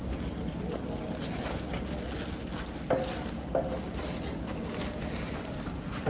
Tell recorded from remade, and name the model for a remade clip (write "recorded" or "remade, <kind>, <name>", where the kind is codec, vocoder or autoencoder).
recorded